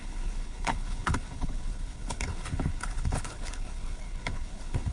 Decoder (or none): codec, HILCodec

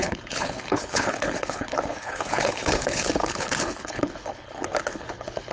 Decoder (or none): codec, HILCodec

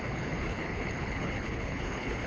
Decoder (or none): codec, HILCodec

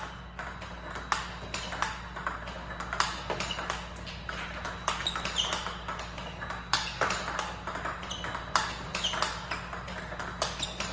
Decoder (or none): none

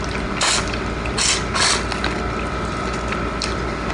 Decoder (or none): none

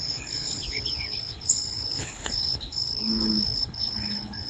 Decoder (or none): codec, HILCodec